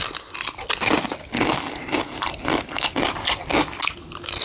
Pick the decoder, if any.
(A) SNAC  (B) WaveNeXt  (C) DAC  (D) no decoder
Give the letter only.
D